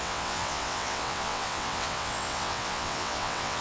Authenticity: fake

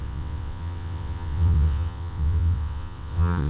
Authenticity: fake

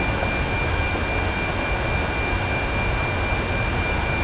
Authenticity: real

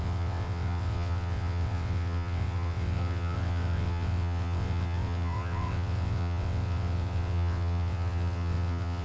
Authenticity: fake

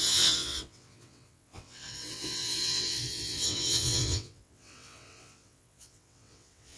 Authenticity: fake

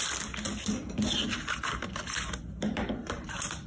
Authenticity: real